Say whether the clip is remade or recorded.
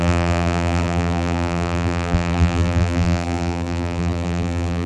remade